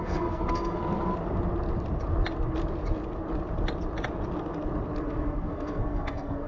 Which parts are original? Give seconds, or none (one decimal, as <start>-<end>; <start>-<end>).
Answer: 1.1-5.0